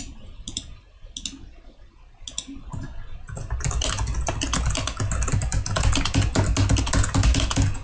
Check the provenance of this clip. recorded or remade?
recorded